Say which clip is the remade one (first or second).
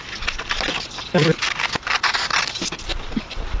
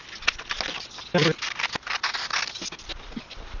first